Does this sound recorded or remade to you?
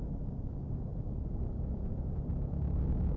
recorded